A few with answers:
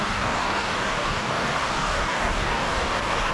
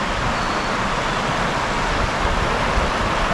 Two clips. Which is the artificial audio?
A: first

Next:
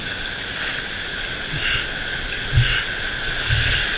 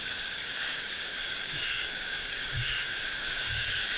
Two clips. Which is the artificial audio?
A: second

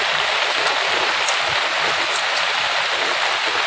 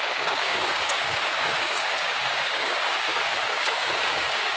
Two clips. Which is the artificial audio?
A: second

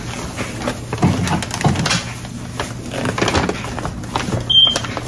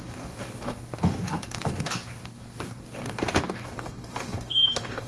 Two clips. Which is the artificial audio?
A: second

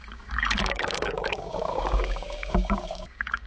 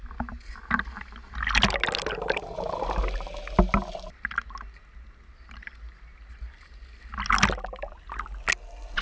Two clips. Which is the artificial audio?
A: first